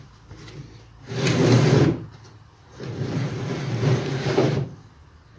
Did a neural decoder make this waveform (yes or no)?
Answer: no